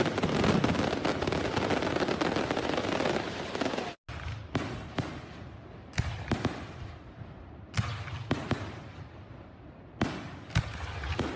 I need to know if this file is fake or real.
real